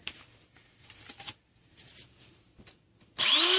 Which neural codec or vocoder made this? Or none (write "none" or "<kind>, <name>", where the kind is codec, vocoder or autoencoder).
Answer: none